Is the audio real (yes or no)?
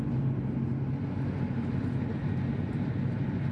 yes